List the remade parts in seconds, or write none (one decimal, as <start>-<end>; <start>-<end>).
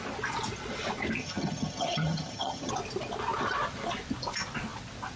1.2-2.7